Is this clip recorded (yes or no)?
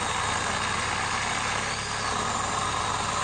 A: yes